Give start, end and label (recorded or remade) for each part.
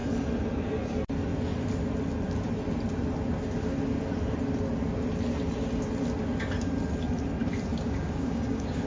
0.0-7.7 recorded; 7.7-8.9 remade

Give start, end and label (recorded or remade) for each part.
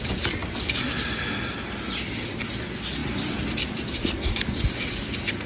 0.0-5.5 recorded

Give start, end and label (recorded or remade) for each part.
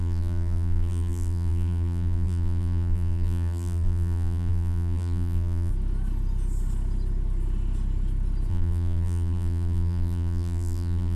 0.0-5.7 remade; 5.7-8.5 recorded; 8.5-11.2 remade